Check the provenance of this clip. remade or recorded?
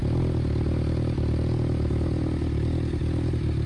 recorded